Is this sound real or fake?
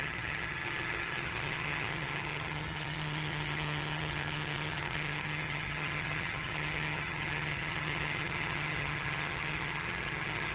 fake